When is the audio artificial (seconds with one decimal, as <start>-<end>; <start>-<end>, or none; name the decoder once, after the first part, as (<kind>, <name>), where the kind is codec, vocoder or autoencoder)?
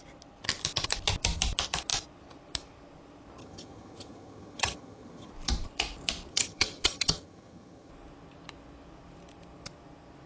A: 3.4-5.3 (vocoder, HiFi-GAN); 6.3-7.9